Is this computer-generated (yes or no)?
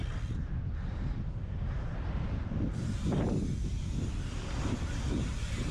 no